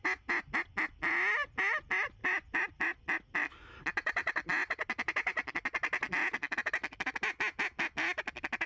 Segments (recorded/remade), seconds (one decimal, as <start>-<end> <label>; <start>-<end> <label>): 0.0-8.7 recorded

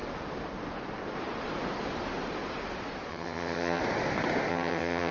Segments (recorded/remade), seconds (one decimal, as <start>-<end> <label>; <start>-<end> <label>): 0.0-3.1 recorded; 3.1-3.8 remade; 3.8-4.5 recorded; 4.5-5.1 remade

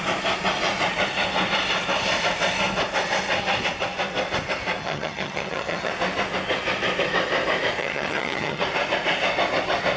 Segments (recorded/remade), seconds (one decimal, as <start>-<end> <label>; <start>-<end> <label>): 0.0-4.8 recorded; 4.8-5.9 remade; 5.9-7.8 recorded; 7.8-8.6 remade; 8.6-10.0 recorded